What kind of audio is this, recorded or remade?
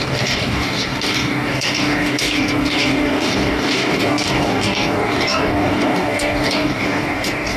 remade